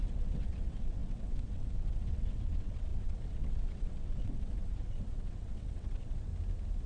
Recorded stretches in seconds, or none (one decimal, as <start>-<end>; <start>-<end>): 6.3-6.9